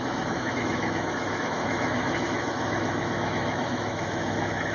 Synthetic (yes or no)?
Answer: yes